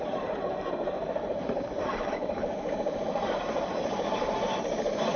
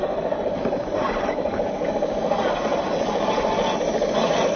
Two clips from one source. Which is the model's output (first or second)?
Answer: first